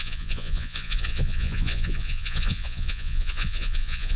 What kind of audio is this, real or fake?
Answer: fake